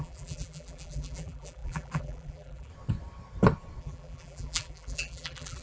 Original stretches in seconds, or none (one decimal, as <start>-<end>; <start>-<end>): 2.7-3.8